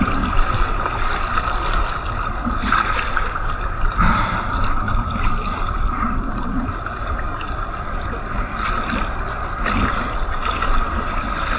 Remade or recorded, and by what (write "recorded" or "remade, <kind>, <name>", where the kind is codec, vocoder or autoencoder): remade, vocoder, BigVGAN v2